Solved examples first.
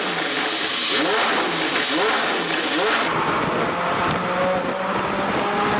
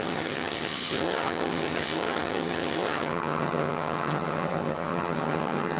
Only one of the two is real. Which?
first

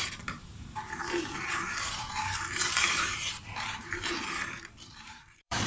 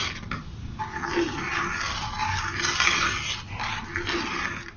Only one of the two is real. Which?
second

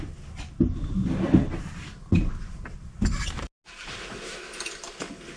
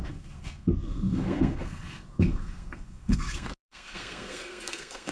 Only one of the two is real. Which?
first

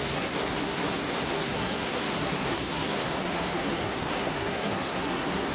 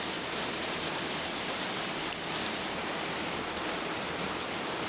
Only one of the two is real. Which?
second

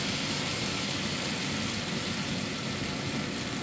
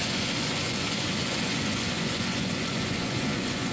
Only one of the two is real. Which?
first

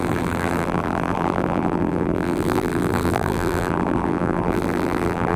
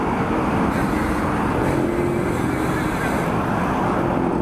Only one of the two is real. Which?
second